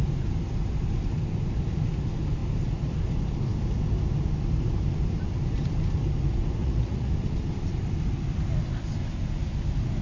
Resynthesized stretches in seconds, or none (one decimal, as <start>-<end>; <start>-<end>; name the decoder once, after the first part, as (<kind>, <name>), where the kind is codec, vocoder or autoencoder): 6.6-7.1 (vocoder, Vocos)